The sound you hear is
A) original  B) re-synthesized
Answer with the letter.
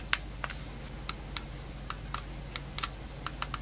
A